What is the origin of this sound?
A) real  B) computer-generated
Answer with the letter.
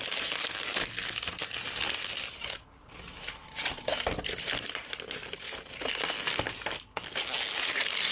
A